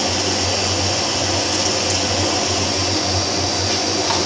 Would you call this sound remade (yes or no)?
yes